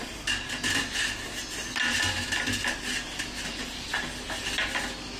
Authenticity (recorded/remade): recorded